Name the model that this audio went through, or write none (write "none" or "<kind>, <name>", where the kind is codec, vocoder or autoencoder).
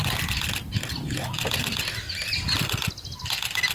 none